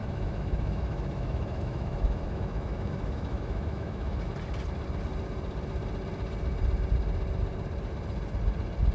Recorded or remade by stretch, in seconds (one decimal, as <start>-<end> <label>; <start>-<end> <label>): 0.0-4.3 remade; 4.3-8.9 recorded